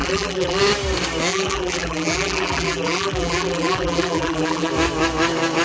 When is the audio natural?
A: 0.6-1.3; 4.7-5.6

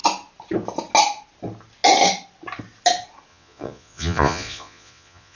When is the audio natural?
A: 0.0-3.3

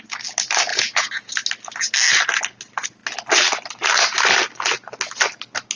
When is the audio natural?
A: 0.0-0.7; 1.3-5.8